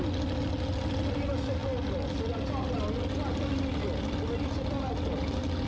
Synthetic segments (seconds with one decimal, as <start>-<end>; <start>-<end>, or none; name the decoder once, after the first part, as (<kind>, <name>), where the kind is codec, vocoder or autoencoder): none